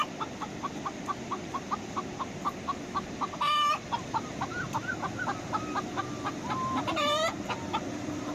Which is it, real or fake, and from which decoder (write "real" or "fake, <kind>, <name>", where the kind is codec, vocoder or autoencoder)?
real